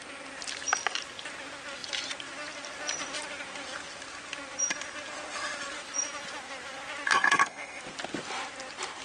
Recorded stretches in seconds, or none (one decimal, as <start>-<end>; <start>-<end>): 0.0-7.1; 7.8-9.0